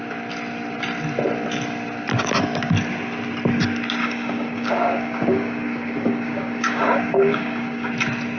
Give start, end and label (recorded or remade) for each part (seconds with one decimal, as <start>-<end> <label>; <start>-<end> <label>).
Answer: 0.0-4.0 recorded; 4.0-7.9 remade; 7.9-8.4 recorded